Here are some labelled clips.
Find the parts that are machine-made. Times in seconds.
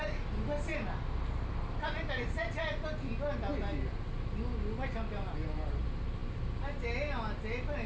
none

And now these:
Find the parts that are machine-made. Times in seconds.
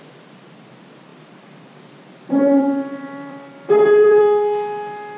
1.1-4.2 (vocoder, BigVGAN v2)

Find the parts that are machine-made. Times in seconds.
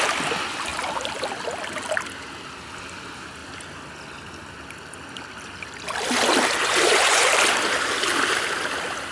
6.6-7.3 (vocoder, Vocos)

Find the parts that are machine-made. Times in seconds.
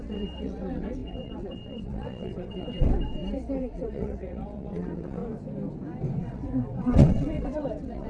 0.0-5.2 (vocoder, WaveNeXt); 6.2-8.1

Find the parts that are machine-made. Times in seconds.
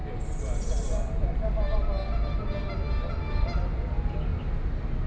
none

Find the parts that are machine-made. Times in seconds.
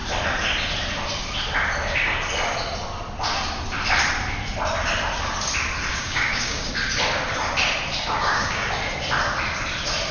5.9-6.7 (codec, DAC); 8.2-8.7